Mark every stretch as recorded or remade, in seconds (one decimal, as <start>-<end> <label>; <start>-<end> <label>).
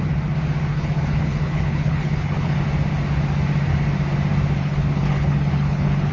0.0-0.7 recorded; 0.7-2.6 remade; 2.6-4.6 recorded; 4.6-6.1 remade